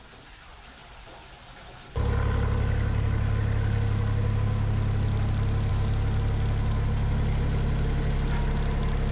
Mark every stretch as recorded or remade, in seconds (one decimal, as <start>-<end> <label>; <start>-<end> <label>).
0.0-9.1 recorded